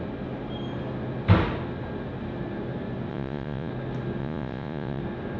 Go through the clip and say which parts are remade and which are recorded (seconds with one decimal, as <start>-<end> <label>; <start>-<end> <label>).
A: 0.0-3.1 recorded; 3.1-3.7 remade; 3.7-4.2 recorded; 4.2-5.0 remade; 5.0-5.4 recorded